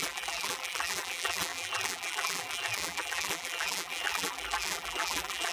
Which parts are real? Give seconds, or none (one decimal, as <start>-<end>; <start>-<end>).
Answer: none